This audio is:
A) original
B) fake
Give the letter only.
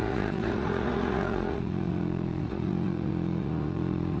B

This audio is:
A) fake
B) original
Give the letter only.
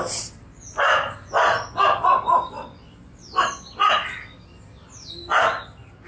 A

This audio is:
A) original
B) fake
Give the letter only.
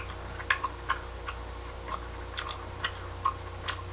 A